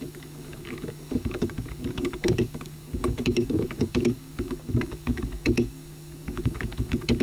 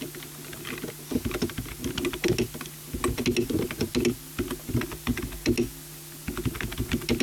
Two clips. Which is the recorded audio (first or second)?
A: second